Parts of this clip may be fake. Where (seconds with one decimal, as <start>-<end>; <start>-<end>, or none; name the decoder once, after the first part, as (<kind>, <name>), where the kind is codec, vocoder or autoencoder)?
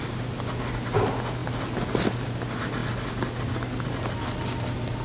none